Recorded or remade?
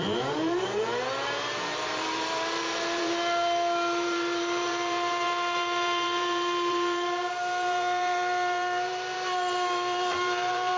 remade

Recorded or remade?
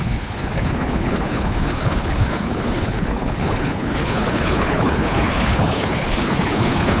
remade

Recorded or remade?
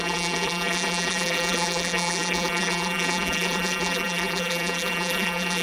remade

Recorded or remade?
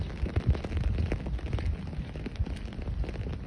recorded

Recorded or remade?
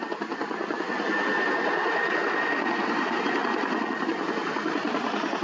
recorded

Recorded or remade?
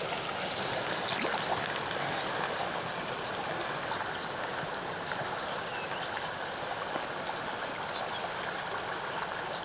recorded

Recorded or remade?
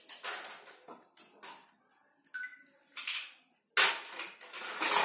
recorded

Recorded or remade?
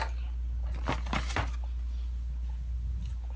recorded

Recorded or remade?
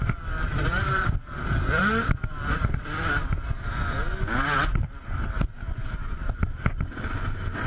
remade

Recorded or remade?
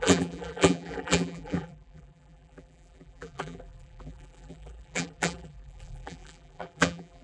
remade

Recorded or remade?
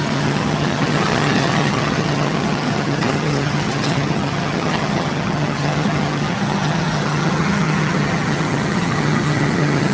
remade